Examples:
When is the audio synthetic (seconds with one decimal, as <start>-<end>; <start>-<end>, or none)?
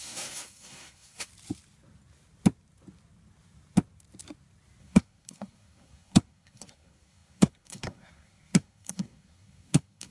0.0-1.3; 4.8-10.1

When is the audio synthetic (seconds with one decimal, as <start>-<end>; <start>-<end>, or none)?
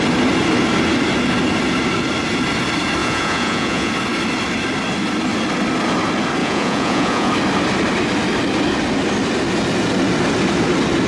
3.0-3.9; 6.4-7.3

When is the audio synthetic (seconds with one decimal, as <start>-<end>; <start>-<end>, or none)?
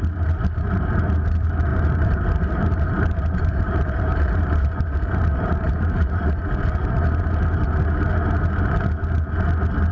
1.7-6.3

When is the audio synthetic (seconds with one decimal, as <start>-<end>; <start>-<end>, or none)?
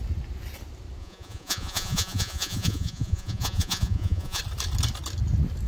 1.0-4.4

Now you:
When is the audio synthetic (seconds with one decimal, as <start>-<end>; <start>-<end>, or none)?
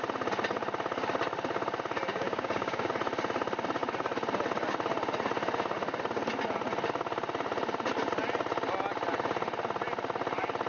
2.1-2.9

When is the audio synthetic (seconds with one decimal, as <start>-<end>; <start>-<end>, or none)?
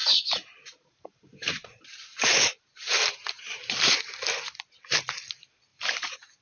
0.0-3.8; 5.7-6.4